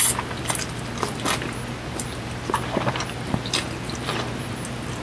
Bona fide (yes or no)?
yes